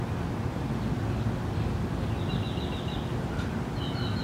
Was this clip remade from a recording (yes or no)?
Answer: no